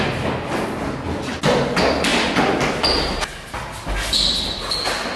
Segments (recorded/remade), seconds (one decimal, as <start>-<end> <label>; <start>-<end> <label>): 0.0-5.2 recorded